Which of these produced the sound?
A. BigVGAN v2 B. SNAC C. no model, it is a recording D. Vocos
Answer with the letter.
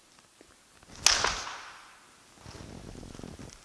C